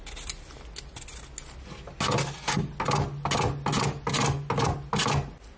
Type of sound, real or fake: real